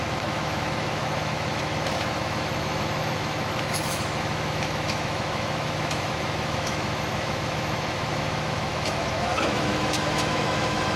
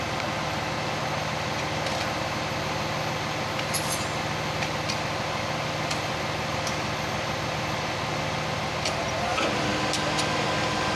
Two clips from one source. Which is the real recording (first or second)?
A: second